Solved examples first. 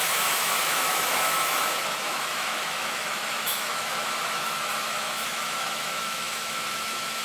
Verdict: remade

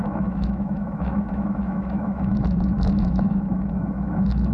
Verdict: remade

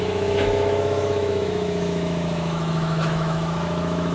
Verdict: remade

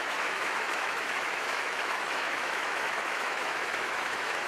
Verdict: remade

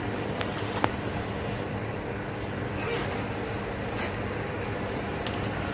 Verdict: recorded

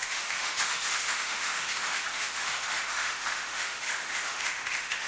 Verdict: remade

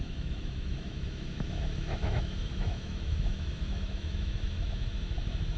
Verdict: remade